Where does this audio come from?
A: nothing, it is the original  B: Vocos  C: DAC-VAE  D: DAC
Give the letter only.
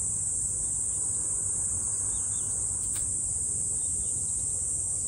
A